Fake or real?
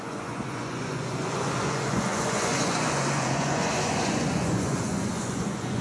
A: fake